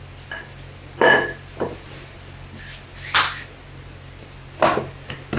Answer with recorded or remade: recorded